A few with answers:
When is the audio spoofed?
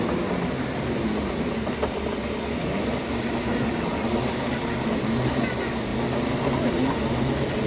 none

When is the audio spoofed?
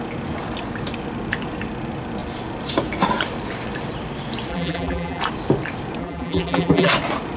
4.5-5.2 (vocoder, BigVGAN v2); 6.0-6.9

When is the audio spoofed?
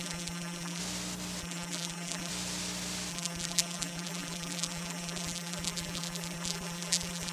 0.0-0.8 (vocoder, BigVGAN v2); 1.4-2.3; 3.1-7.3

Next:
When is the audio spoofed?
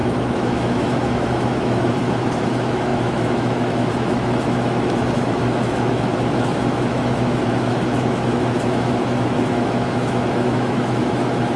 0.0-11.6 (autoencoder, DAC-VAE)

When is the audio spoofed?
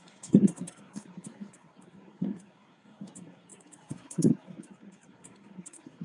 0.0-6.0 (codec, SNAC)